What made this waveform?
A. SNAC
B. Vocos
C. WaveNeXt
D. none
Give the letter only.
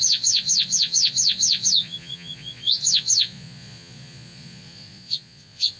B